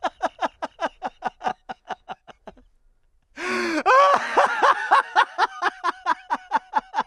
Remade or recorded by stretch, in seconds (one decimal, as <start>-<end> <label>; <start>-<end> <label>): 0.0-1.5 recorded; 1.5-2.3 remade; 2.3-4.8 recorded; 4.8-5.7 remade; 5.7-7.1 recorded